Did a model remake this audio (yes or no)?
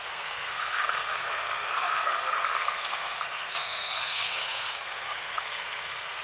yes